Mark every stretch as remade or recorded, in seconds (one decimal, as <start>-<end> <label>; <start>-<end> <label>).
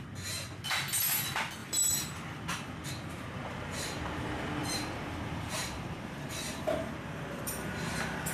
0.0-1.6 recorded; 1.6-2.9 remade; 2.9-4.6 recorded; 4.6-7.9 remade; 7.9-8.3 recorded